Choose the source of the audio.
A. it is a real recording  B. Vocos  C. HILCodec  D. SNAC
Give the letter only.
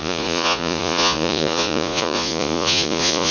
B